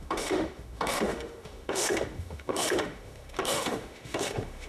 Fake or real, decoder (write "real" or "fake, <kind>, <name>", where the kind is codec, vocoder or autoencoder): fake, autoencoder, DAC-VAE